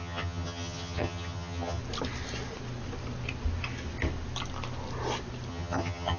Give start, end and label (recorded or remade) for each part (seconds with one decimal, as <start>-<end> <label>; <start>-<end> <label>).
0.0-1.8 remade; 1.8-5.5 recorded; 5.5-6.2 remade